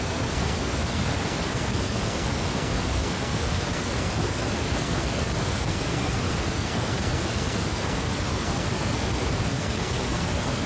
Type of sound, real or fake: fake